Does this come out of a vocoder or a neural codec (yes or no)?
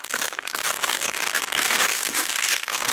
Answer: yes